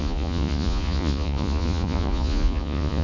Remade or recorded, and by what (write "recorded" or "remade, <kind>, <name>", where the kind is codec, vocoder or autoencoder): remade, vocoder, Vocos